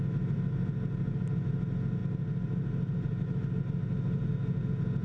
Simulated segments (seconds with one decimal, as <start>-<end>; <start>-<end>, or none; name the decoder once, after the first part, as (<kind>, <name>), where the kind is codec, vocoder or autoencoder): none